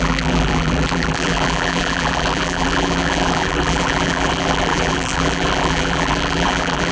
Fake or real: fake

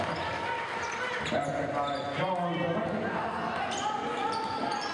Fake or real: real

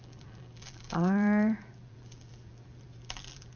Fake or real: fake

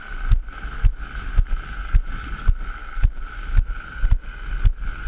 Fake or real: real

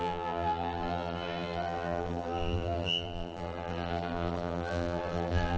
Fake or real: fake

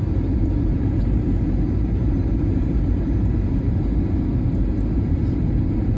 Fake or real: fake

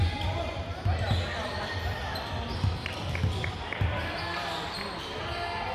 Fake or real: real